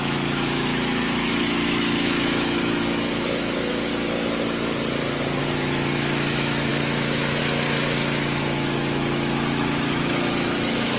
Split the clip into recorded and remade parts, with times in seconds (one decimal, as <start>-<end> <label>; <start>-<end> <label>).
0.0-3.9 remade; 3.9-5.4 recorded; 5.4-11.0 remade